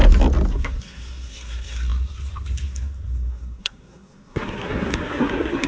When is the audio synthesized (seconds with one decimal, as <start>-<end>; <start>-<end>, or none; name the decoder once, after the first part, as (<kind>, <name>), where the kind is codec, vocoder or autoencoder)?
0.5-5.7 (codec, SNAC)